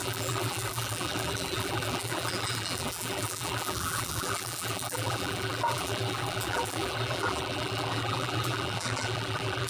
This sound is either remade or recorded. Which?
remade